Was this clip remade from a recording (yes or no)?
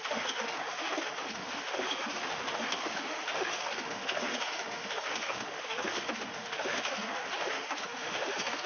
yes